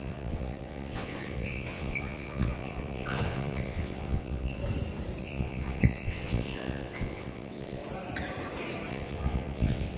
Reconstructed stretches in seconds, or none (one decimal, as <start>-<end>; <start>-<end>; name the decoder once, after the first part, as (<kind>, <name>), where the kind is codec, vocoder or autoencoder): 0.0-4.6 (vocoder, WaveNeXt); 5.2-7.8; 8.9-10.0